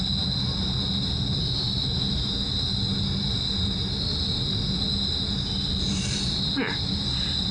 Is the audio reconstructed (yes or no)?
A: no